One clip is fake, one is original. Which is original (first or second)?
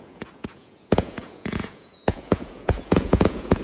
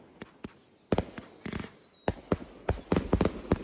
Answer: second